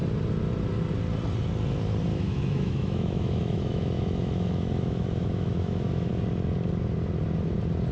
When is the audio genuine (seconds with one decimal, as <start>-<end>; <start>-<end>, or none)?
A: 0.0-2.1; 6.1-7.9